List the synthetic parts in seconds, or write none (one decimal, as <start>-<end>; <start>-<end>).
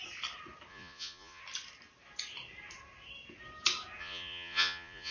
0.7-1.4; 4.0-5.1